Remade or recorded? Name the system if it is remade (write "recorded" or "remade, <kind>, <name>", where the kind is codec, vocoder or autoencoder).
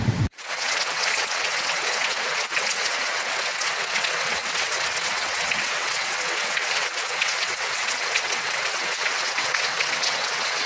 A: remade, vocoder, WaveNeXt